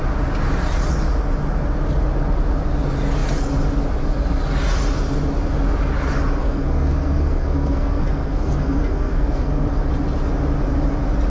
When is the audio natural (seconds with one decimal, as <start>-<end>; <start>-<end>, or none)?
0.0-6.4; 9.8-11.3